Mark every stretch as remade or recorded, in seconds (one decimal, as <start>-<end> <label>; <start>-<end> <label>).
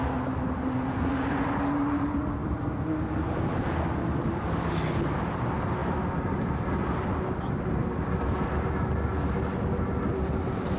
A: 0.0-2.4 recorded; 2.4-3.8 remade; 3.8-5.8 recorded; 5.8-6.7 remade; 6.7-10.8 recorded